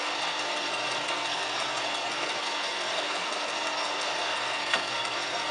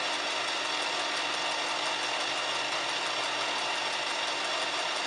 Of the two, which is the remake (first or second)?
first